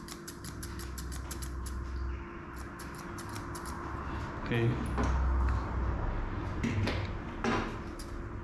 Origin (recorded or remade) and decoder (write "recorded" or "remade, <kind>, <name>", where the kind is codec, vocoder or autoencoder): recorded